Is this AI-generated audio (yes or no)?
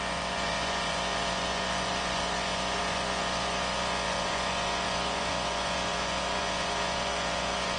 yes